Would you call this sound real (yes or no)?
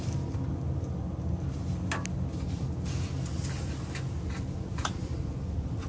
yes